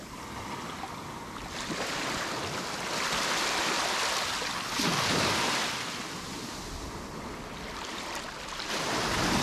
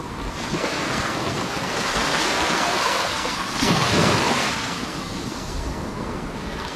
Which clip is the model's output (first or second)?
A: second